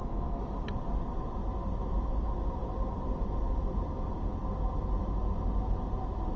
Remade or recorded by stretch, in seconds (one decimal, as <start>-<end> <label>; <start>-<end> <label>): 0.0-0.6 remade; 0.6-6.4 recorded